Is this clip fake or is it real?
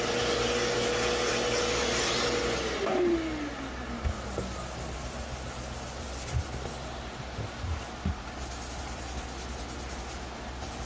real